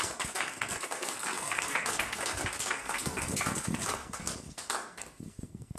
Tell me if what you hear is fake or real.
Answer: fake